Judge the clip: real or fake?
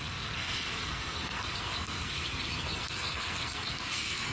fake